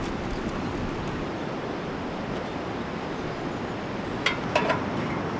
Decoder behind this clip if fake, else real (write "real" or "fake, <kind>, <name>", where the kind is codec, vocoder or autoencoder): real